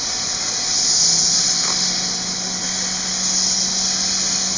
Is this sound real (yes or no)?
yes